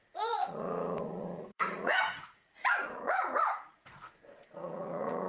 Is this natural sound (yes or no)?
no